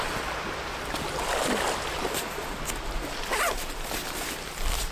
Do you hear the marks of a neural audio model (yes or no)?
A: no